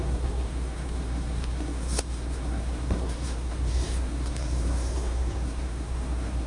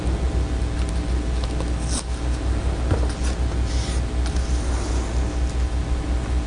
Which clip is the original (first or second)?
second